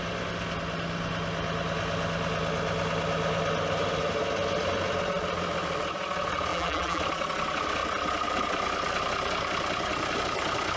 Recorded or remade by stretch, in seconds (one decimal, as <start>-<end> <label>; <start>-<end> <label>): 0.0-6.5 recorded; 6.5-7.0 remade; 7.0-10.8 recorded